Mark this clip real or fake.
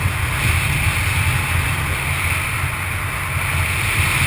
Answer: real